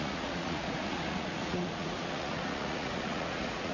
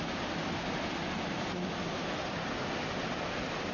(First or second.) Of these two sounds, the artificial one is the first